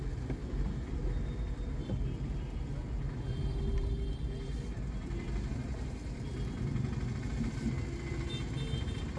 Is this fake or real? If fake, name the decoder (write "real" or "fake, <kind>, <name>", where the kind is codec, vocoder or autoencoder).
real